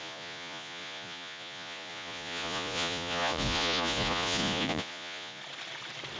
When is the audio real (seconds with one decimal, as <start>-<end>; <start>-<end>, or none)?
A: 5.4-6.2